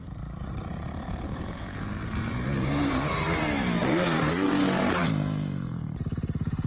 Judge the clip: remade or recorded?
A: remade